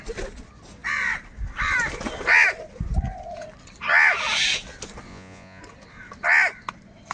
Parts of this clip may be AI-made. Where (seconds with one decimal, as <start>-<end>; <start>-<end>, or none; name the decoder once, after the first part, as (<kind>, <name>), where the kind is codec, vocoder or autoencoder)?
5.1-5.6 (vocoder, Vocos)